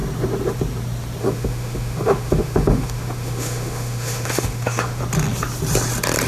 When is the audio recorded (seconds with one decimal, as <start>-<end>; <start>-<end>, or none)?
0.0-1.2; 5.0-6.3